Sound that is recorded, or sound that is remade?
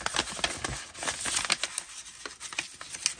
recorded